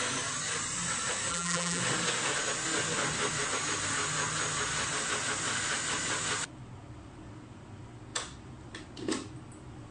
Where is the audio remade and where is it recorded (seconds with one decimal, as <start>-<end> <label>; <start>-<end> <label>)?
0.0-1.3 recorded; 1.3-1.8 remade; 1.8-9.9 recorded